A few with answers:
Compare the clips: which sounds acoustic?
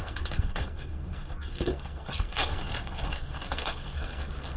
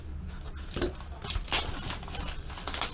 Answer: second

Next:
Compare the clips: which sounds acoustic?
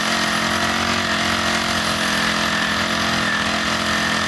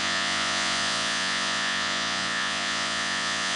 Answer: first